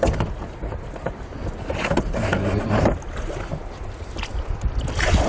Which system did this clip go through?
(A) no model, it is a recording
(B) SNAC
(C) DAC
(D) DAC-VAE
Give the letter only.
A